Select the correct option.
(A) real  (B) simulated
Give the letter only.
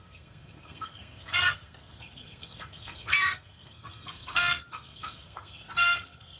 B